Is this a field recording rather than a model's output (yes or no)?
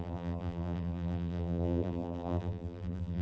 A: no